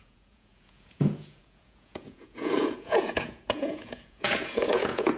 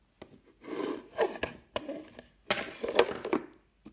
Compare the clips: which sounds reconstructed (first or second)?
first